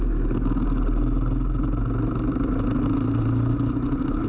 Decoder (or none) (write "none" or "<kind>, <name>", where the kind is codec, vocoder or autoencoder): none